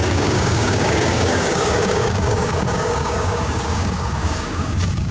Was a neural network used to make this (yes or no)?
yes